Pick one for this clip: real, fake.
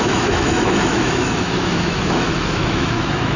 fake